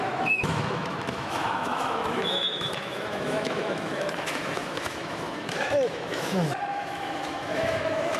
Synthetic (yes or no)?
yes